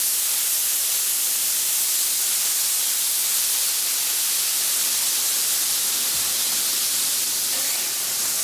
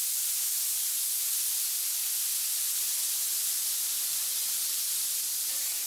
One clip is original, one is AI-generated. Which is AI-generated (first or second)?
second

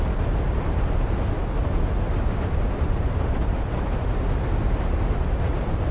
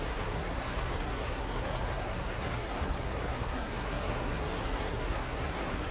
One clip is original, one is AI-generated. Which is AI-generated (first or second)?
second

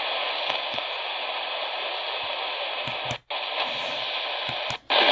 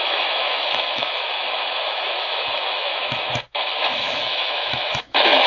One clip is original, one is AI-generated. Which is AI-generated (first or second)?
second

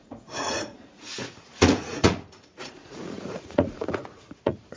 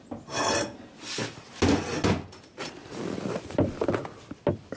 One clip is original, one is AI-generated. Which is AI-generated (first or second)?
first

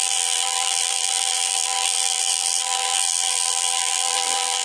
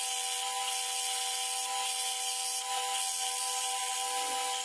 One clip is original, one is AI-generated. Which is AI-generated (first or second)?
first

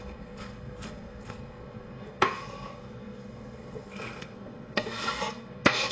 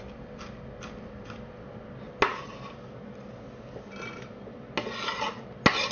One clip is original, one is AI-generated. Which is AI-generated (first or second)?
first